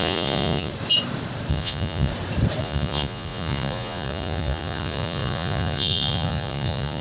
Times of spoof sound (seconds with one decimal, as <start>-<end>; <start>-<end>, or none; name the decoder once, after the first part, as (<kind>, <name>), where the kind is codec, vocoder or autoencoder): 0.0-0.7 (vocoder, Vocos); 1.5-2.1; 2.6-7.0